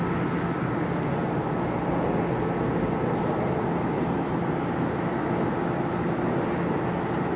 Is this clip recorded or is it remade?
recorded